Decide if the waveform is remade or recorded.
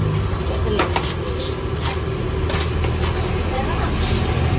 recorded